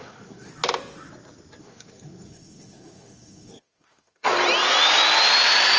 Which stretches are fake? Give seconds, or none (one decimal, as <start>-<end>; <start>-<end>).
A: 0.0-0.5; 1.6-4.3